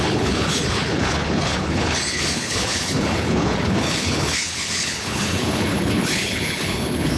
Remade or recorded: remade